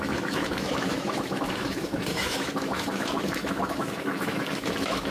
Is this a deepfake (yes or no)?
yes